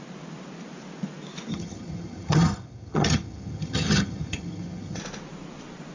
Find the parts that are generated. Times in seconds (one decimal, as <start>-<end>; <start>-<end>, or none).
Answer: 1.5-5.0